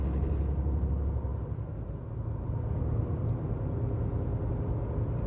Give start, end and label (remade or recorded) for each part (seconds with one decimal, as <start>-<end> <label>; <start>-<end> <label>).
0.0-5.3 recorded